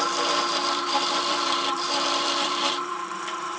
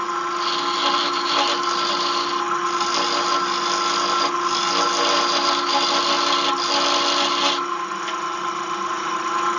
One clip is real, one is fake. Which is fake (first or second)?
first